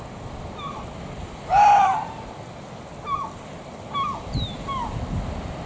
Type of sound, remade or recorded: recorded